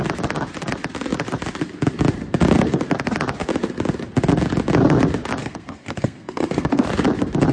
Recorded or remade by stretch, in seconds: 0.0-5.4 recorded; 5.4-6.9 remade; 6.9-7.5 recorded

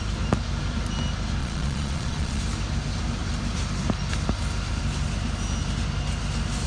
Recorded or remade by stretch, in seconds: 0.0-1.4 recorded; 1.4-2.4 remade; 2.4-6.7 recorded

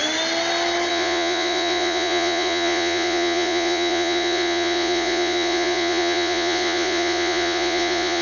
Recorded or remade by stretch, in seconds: 0.0-0.9 recorded; 0.9-8.2 remade